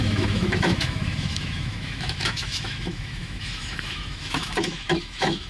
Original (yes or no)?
no